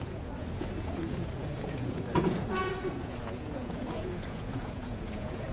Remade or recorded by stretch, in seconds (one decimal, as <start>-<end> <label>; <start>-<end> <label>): 0.0-5.5 remade